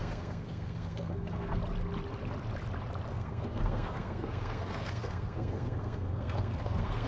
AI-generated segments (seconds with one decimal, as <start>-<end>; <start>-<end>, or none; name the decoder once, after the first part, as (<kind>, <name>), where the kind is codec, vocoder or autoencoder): 0.0-1.6 (codec, SNAC); 3.1-7.1